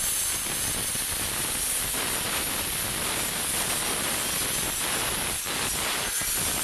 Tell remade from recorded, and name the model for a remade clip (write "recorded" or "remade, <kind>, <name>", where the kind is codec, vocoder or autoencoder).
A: recorded